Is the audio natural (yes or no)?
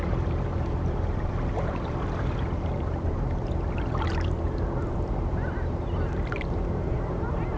no